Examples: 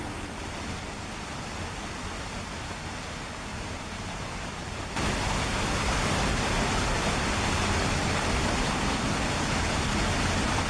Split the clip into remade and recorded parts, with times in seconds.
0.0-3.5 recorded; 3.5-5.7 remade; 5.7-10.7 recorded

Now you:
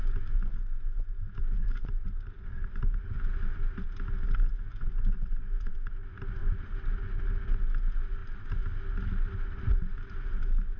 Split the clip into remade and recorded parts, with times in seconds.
0.0-2.1 remade; 2.1-4.7 recorded; 4.7-5.9 remade; 5.9-10.8 recorded

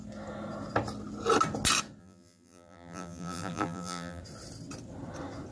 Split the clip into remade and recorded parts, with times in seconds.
0.0-2.0 recorded; 2.0-4.2 remade; 4.2-5.5 recorded

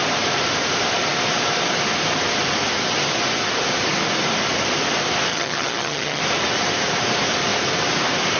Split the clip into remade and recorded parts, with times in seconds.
0.0-5.3 recorded; 5.3-6.2 remade; 6.2-8.4 recorded